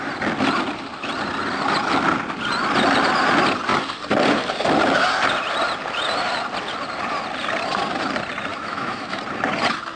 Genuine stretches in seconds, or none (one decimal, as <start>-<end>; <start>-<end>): 0.0-8.5; 9.2-10.0